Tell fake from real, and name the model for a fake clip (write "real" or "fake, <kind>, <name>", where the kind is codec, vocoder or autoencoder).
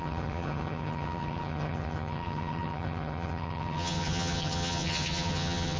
fake, vocoder, HiFi-GAN